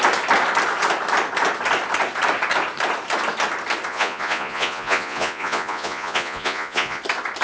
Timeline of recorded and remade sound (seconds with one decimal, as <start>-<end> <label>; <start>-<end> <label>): 0.0-3.9 recorded; 3.9-7.0 remade; 7.0-7.4 recorded